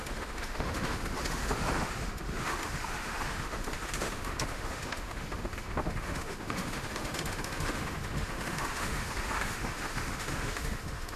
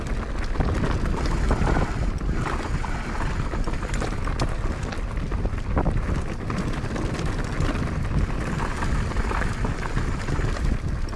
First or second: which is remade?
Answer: first